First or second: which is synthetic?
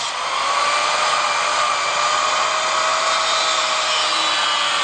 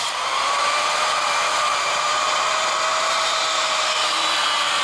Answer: second